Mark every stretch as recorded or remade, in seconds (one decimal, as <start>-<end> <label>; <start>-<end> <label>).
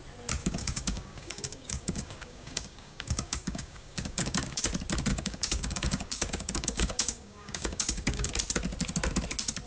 0.0-0.4 recorded; 0.4-4.6 remade; 4.6-5.1 recorded; 5.1-8.3 remade; 8.3-9.7 recorded